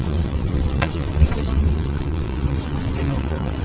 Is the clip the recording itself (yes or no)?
no